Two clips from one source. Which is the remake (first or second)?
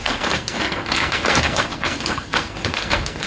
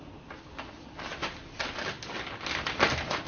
first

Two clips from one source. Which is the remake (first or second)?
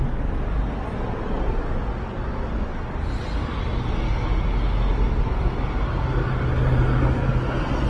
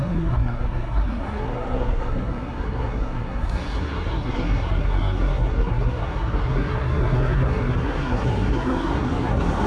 second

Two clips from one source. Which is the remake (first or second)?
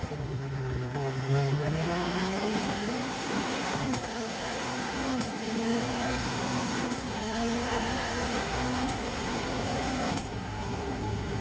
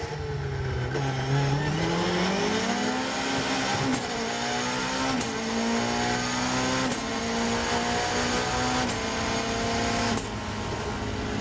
first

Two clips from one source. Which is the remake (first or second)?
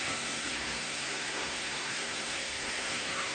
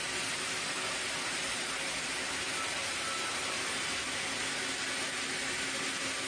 first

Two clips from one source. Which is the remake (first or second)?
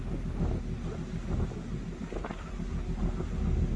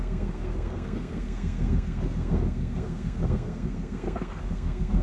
second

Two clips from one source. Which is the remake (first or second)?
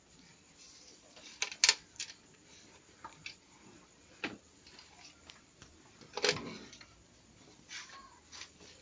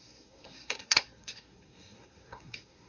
second